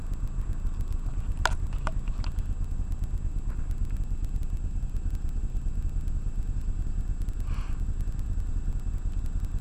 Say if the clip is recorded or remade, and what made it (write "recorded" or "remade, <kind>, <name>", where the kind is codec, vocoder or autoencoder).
recorded